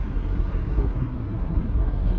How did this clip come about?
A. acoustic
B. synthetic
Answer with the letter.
B